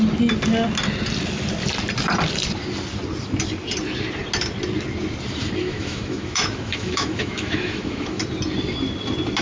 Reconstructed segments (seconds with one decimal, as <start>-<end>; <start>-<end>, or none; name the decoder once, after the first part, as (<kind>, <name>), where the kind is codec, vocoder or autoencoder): 5.6-8.2 (autoencoder, DAC-VAE)

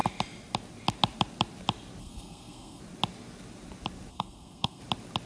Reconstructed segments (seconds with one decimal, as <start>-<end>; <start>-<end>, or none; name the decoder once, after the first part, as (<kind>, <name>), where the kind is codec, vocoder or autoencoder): 2.0-2.8 (codec, SNAC); 4.1-4.8

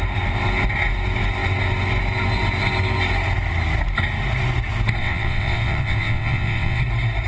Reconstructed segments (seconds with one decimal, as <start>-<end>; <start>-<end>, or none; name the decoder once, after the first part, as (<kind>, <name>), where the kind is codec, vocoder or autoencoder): 5.0-6.8 (vocoder, WaveNeXt)

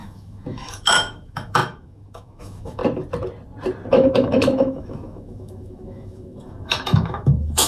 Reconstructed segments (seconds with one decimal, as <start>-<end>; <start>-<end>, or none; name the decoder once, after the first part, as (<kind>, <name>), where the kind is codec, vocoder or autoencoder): 0.0-2.8 (autoencoder, DAC-VAE); 3.9-7.7

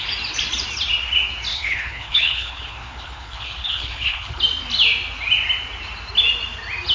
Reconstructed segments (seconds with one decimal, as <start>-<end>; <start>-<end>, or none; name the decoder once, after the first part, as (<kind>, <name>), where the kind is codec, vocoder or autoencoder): 1.5-4.4 (codec, HILCodec)

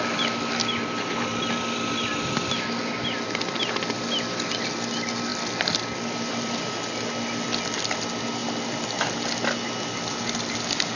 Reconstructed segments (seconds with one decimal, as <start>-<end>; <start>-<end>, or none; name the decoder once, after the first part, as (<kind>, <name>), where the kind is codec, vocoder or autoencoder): none